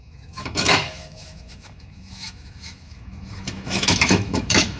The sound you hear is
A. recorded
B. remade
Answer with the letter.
B